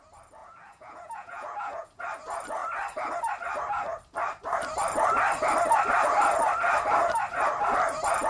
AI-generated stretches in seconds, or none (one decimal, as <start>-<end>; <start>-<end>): 0.4-2.0